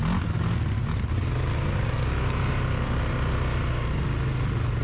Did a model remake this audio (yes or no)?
no